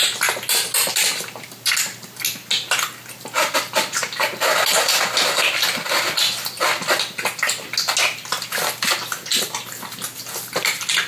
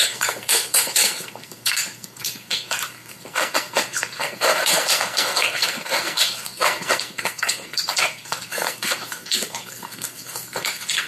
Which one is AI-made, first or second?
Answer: second